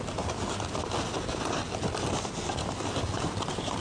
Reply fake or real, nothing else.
real